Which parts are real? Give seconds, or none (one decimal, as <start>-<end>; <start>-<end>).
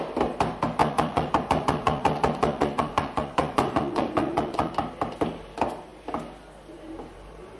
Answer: 0.0-0.8; 4.7-7.6